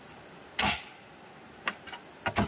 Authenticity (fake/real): real